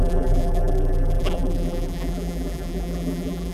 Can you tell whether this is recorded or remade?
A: remade